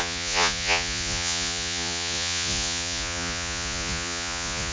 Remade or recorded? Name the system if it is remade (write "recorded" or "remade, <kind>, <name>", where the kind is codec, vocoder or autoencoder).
remade, vocoder, Vocos